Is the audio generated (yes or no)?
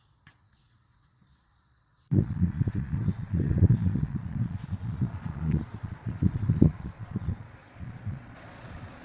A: yes